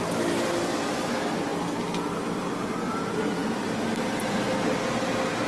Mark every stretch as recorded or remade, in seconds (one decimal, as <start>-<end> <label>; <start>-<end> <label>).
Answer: 0.0-5.5 recorded